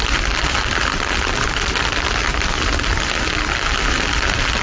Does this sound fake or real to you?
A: real